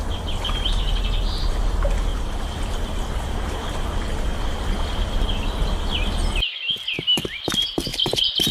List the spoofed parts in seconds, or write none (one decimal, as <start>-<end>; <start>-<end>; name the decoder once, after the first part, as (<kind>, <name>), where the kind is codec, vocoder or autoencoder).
2.1-2.6 (vocoder, BigVGAN v2); 7.9-8.5